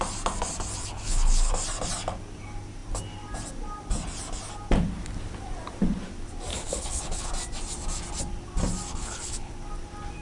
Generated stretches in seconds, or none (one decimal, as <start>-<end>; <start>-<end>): 0.9-1.5; 6.5-7.3; 8.9-9.5